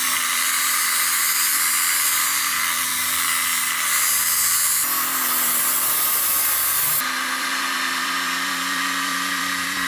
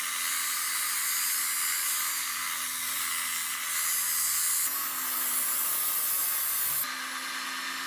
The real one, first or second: second